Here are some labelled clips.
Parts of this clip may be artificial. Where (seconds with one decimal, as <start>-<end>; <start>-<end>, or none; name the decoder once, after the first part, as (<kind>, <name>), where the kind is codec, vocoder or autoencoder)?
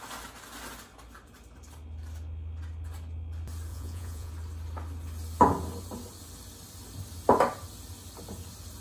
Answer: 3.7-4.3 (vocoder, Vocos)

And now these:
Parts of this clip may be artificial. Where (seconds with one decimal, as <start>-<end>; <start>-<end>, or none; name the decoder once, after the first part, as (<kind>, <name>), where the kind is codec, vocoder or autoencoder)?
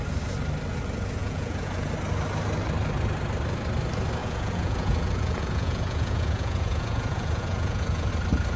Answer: 1.2-1.9 (vocoder, Vocos); 4.2-8.1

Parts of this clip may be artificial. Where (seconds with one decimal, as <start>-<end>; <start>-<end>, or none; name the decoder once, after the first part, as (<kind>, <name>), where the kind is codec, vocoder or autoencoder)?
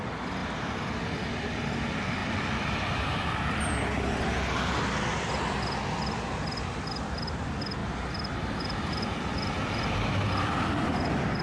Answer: none